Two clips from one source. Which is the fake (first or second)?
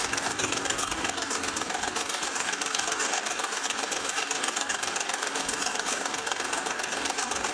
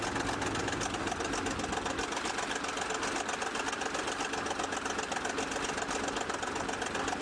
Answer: first